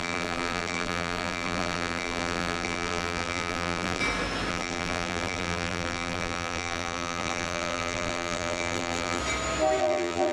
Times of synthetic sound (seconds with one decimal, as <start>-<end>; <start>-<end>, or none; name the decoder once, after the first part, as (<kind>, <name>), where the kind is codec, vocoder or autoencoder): 0.0-4.0 (vocoder, BigVGAN v2); 4.5-9.2; 9.8-10.3